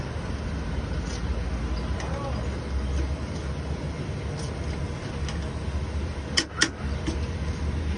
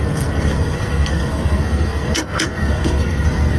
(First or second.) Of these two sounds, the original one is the first